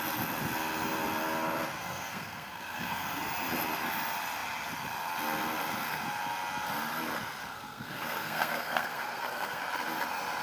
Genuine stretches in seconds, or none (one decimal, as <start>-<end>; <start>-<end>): 0.0-1.8; 3.2-7.4; 9.6-10.4